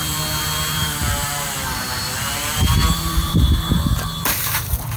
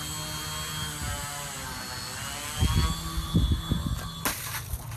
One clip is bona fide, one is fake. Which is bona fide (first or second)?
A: second